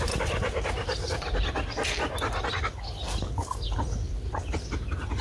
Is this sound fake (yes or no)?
no